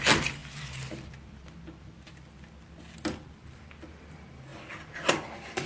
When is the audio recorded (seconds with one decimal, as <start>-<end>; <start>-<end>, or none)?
0.4-2.1; 4.5-5.1